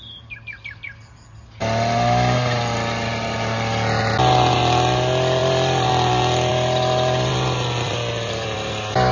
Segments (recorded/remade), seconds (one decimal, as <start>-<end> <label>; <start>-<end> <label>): 0.0-5.4 recorded; 5.4-5.9 remade; 5.9-6.5 recorded; 6.5-8.7 remade; 8.7-9.1 recorded